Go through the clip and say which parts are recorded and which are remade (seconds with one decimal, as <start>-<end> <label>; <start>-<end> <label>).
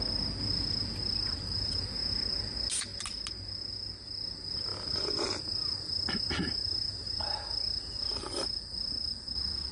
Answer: 0.0-9.7 recorded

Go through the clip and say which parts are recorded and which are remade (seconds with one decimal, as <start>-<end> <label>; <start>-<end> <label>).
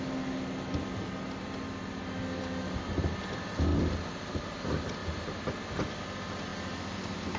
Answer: 0.0-7.4 recorded